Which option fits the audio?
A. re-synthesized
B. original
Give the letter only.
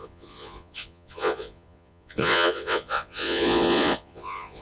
A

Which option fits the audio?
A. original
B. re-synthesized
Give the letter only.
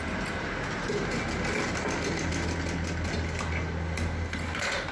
A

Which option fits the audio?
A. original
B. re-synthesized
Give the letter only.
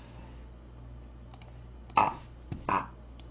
A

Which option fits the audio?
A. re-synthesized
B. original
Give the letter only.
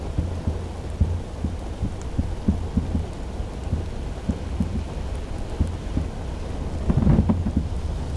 B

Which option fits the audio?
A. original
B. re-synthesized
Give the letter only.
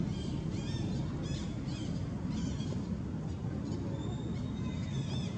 A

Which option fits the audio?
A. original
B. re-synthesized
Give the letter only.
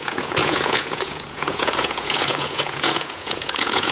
B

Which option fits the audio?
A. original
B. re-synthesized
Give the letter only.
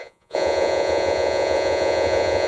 B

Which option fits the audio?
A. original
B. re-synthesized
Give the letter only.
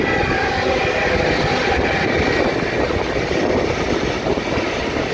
A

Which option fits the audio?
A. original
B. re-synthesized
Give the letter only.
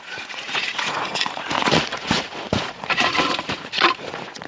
B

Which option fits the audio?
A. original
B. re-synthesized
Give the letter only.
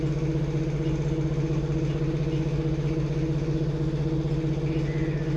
A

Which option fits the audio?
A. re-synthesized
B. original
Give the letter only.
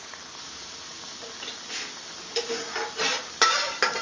B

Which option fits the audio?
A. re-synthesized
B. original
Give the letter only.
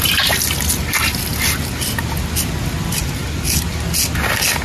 B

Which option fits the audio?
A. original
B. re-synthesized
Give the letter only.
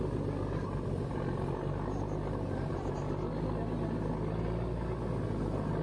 A